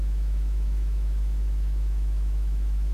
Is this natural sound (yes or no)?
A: no